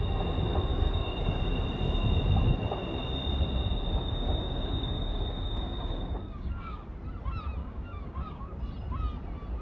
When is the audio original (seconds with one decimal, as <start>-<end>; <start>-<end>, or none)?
0.0-0.7; 1.4-3.9; 6.8-7.6; 8.6-9.6